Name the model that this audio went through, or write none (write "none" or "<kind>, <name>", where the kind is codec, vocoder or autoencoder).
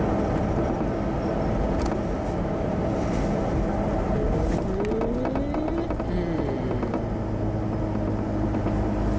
none